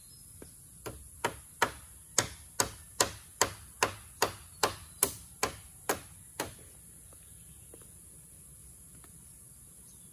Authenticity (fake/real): real